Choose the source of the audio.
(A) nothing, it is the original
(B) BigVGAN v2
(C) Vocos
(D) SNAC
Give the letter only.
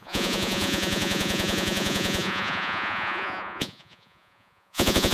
C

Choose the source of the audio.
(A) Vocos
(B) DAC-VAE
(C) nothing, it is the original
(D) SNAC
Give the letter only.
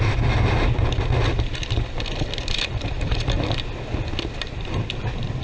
C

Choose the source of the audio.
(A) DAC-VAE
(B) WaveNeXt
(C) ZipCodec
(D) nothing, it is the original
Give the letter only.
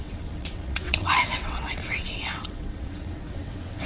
B